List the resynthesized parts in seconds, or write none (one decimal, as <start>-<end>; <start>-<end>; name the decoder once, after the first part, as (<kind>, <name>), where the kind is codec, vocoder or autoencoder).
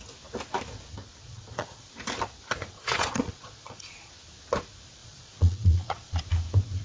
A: 1.2-1.9 (vocoder, Vocos); 2.6-4.1; 5.0-6.2